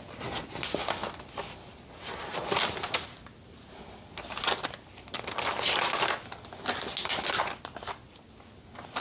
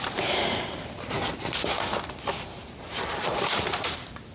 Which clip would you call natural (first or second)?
first